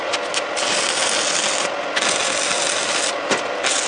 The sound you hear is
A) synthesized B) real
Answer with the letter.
B